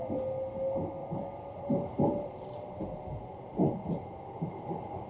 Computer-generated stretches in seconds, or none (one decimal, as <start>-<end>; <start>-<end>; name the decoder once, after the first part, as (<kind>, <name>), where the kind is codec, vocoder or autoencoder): 1.0-2.8 (vocoder, BigVGAN v2)

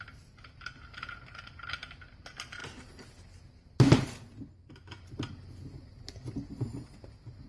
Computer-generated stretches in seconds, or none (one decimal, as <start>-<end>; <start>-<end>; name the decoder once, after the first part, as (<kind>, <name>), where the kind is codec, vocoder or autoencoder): none

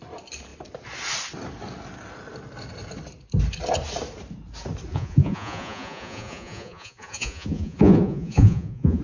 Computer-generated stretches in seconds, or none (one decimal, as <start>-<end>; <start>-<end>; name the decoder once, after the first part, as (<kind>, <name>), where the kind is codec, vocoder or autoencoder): 4.9-9.0 (vocoder, Vocos)